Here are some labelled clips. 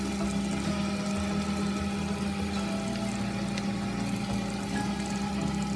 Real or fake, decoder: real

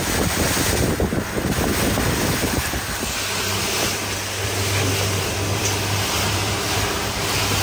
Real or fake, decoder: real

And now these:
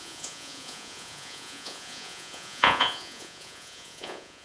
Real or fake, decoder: fake, vocoder, Vocos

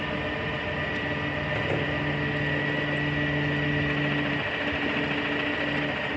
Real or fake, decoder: real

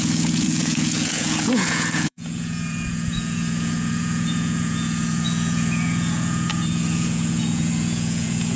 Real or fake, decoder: fake, vocoder, Vocos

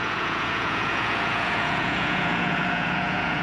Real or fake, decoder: fake, vocoder, Vocos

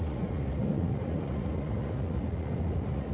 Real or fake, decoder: fake, vocoder, Vocos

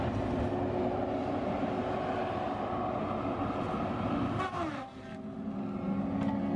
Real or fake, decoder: real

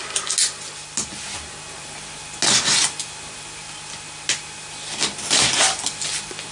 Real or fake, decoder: real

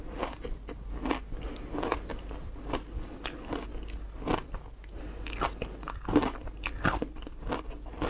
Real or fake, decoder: real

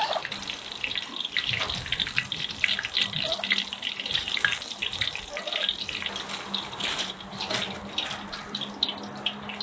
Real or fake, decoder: real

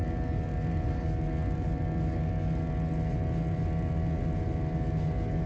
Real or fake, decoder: real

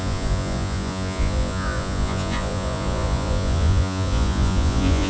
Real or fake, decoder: fake, vocoder, Vocos